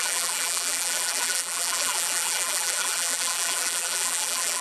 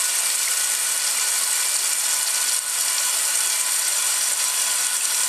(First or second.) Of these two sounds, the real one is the second